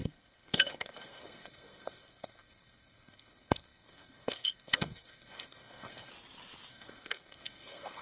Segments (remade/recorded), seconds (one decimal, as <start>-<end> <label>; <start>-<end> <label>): 0.0-6.1 remade; 6.1-6.7 recorded; 6.7-8.0 remade